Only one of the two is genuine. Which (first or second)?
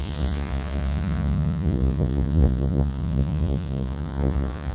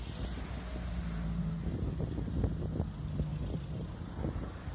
second